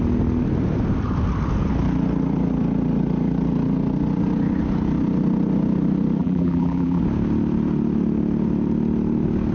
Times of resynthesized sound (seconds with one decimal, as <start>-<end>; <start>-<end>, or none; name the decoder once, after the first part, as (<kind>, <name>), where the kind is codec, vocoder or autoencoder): 6.2-7.0 (vocoder, BigVGAN v2)